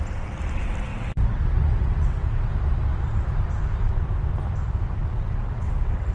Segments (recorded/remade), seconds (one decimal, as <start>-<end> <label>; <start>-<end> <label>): 0.0-0.9 recorded; 0.9-2.5 remade; 2.5-5.0 recorded; 5.0-6.1 remade